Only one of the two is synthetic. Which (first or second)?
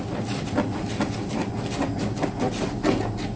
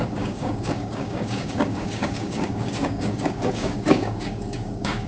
second